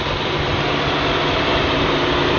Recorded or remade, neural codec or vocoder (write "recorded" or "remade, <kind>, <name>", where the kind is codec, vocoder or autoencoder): recorded